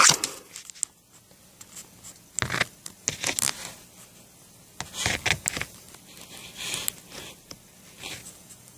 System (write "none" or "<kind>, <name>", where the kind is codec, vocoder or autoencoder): none